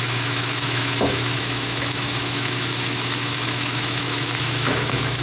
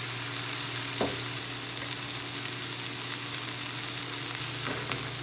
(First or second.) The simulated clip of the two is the first